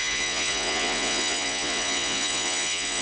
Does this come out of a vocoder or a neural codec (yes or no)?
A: yes